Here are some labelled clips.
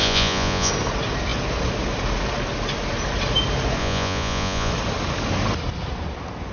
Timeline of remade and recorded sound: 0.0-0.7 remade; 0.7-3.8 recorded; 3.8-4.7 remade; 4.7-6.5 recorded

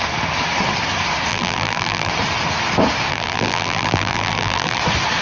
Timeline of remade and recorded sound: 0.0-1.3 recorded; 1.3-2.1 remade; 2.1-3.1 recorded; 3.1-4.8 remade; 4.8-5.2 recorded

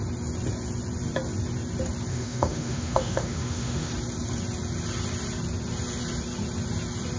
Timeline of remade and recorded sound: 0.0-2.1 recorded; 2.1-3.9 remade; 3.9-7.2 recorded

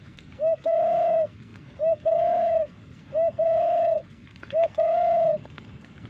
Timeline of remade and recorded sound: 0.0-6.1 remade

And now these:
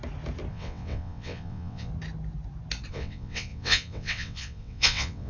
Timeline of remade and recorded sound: 0.0-0.5 recorded; 0.5-1.9 remade; 1.9-2.9 recorded; 2.9-5.3 remade

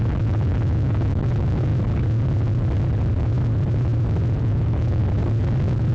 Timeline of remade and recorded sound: 0.0-1.7 remade; 1.7-4.4 recorded; 4.4-5.0 remade; 5.0-5.9 recorded